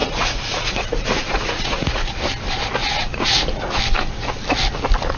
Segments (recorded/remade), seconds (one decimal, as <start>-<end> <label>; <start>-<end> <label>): 0.0-2.1 remade; 2.1-2.8 recorded; 2.8-3.8 remade; 3.8-5.2 recorded

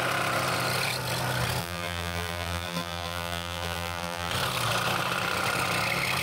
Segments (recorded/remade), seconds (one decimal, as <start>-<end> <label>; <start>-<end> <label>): 0.0-1.6 recorded; 1.6-4.3 remade; 4.3-6.2 recorded

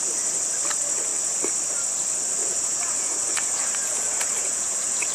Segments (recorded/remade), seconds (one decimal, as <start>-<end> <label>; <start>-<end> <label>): 0.0-2.4 recorded; 2.4-5.1 remade